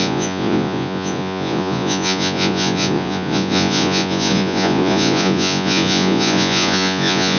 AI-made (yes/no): yes